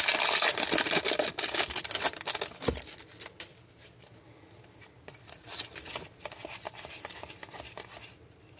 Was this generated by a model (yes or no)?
no